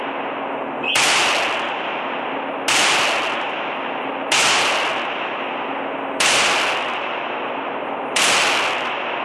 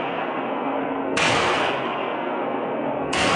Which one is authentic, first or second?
first